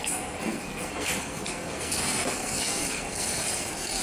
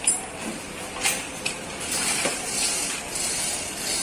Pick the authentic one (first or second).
second